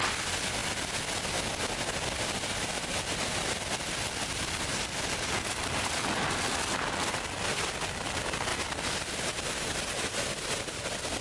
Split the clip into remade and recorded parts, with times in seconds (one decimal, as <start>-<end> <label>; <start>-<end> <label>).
0.0-11.2 recorded